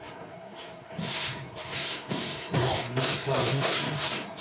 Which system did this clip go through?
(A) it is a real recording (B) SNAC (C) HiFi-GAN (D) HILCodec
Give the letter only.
B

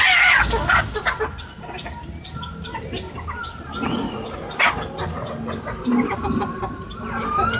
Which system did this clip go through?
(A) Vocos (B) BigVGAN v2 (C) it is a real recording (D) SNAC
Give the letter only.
C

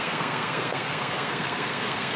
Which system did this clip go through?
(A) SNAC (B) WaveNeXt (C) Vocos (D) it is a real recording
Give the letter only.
A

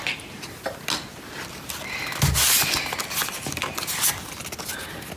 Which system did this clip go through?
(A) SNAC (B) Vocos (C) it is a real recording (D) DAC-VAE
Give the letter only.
C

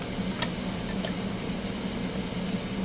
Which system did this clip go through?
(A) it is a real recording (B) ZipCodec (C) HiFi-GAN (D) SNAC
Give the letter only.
A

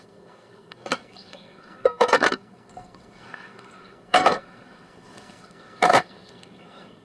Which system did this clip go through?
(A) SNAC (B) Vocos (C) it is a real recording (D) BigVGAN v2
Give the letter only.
A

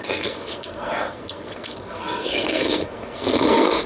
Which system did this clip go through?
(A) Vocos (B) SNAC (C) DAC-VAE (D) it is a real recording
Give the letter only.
B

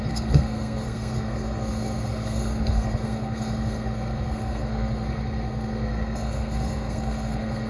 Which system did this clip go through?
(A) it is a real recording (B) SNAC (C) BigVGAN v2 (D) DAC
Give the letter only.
B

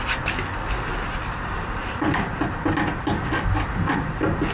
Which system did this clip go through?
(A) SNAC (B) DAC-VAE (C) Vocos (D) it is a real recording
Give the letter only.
D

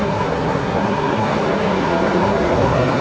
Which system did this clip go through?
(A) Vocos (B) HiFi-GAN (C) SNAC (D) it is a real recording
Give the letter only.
C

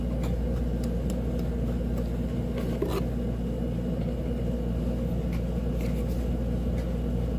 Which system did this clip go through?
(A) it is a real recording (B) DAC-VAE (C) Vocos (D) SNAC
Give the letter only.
A